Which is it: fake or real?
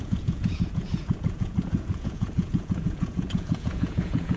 fake